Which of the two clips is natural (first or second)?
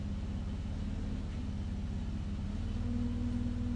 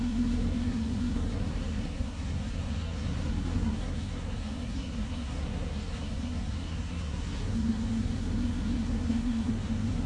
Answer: first